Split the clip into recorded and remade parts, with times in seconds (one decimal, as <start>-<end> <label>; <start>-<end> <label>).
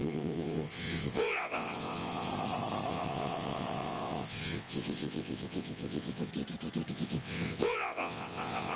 0.0-2.3 remade; 2.3-2.9 recorded; 2.9-6.3 remade; 6.3-6.9 recorded; 6.9-8.8 remade